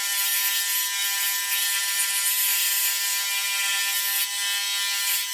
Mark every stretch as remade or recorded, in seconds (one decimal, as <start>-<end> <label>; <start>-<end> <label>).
0.0-5.3 recorded